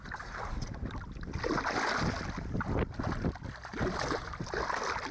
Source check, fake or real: real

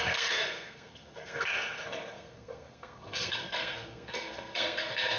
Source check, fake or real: fake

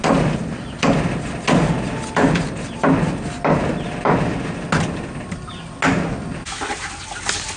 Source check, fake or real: real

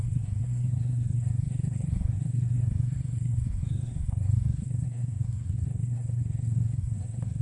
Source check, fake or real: fake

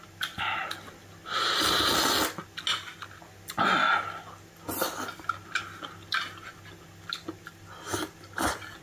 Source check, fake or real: real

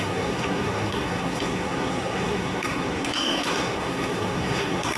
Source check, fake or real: fake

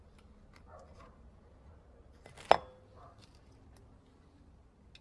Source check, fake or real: real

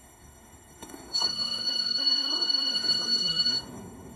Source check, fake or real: fake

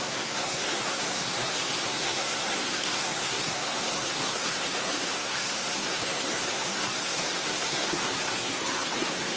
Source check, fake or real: fake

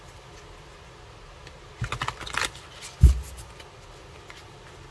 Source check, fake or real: real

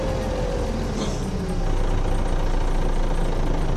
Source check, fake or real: real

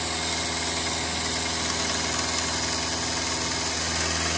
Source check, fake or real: real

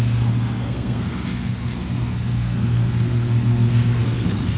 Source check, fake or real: fake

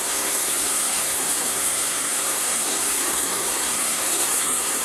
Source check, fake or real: fake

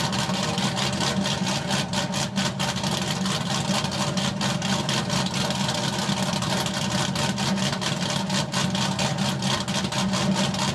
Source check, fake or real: real